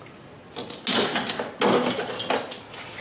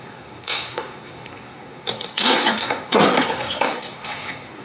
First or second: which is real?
first